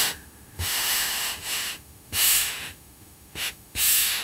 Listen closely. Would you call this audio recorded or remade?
remade